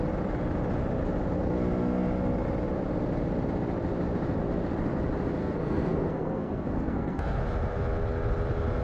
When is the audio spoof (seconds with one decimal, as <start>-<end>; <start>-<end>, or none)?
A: 5.4-7.4

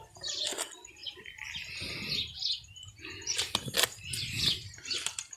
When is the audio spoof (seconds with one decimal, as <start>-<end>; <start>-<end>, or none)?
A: none

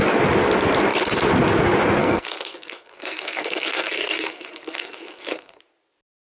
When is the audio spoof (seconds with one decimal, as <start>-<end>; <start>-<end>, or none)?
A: 2.0-5.6

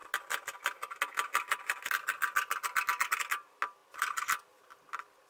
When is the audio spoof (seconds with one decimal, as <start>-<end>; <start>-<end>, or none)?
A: none

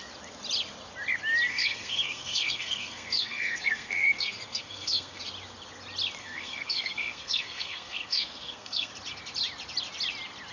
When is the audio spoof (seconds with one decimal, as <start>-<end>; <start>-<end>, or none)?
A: 1.5-5.2; 6.2-8.9